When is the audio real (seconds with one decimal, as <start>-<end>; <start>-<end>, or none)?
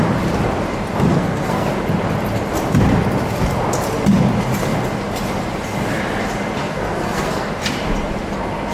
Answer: 0.0-1.1; 1.7-6.6; 7.5-8.7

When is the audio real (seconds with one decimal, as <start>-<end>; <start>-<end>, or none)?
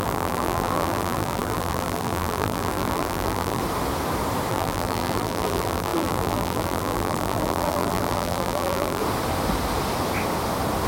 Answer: 3.6-4.5; 9.0-10.9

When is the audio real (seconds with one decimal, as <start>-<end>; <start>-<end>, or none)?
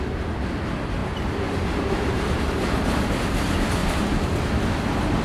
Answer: 0.0-1.0; 2.4-3.8; 4.4-5.2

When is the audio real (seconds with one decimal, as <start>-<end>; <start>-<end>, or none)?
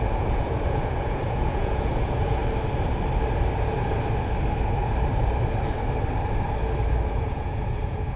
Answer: 2.4-7.1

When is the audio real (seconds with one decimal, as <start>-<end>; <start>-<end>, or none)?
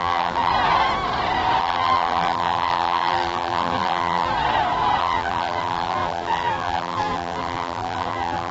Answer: 0.5-1.6; 4.3-5.0